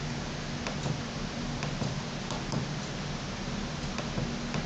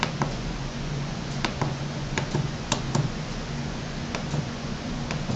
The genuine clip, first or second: first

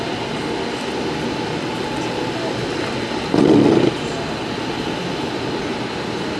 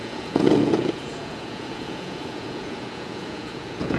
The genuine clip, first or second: first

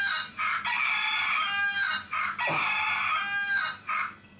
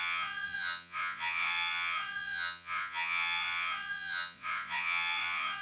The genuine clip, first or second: first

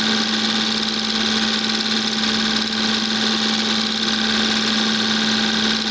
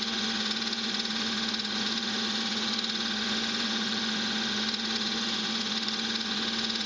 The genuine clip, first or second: first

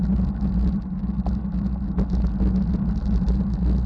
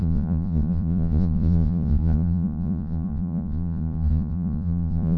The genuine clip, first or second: first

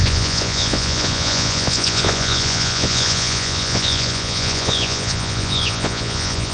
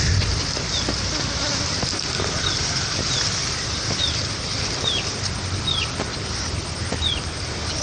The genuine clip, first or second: second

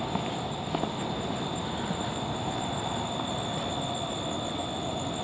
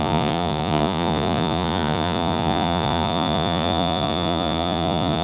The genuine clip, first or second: first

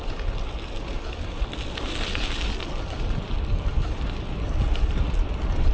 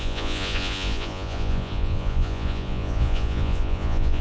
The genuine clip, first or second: first